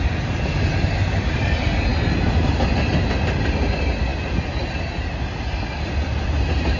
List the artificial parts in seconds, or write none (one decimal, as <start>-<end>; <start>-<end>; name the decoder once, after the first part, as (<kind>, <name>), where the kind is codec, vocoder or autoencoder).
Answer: none